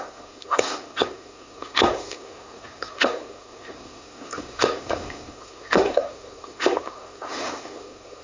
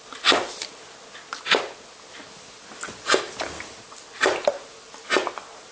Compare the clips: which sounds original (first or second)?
second